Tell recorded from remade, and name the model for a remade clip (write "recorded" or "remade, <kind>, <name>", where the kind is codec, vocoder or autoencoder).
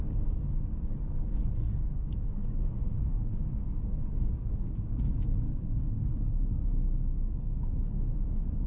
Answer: remade, codec, DAC